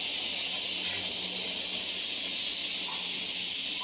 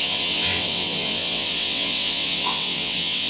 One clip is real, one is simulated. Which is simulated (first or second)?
second